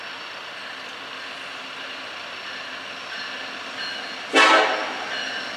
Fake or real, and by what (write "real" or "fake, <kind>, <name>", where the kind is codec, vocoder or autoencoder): real